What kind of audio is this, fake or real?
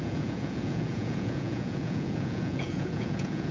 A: fake